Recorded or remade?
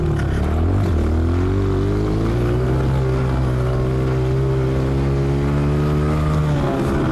recorded